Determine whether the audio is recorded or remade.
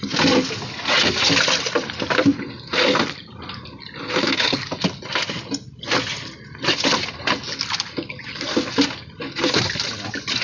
recorded